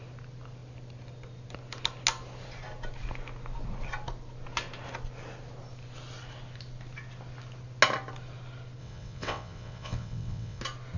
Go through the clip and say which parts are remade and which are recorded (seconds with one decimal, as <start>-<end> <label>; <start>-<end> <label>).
0.0-8.8 recorded; 8.8-10.6 remade; 10.6-11.0 recorded